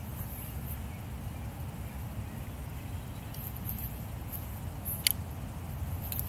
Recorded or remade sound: recorded